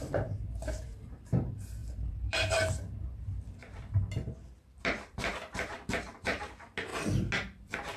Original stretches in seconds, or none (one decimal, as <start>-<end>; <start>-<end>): 0.0-1.8; 2.7-5.3; 6.1-8.0